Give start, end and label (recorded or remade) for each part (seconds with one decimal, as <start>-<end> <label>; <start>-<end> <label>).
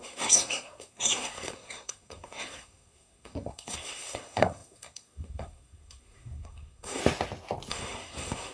0.0-7.0 remade; 7.0-7.7 recorded; 7.7-8.5 remade